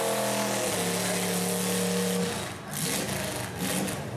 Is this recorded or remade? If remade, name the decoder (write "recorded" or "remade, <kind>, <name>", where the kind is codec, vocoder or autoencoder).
recorded